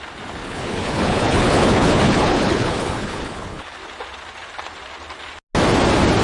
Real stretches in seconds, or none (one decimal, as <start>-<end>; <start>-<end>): 0.0-0.4; 3.8-6.2